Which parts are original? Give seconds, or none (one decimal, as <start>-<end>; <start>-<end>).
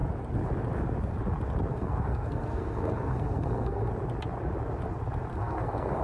0.0-1.7; 3.9-5.3